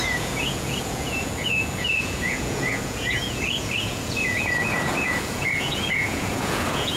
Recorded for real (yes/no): no